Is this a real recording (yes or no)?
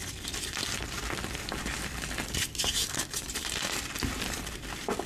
no